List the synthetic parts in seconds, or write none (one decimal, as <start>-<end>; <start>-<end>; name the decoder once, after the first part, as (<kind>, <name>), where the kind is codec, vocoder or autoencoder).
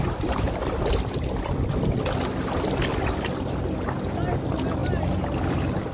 none